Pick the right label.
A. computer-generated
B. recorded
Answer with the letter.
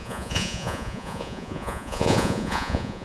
A